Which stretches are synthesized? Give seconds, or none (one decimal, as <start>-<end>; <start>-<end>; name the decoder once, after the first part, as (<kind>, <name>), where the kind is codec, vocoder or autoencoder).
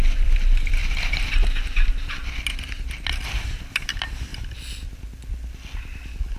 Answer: 0.8-4.5 (vocoder, BigVGAN v2)